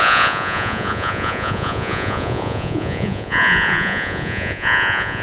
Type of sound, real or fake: fake